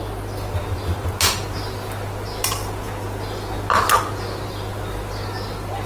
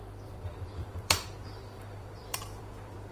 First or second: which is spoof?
second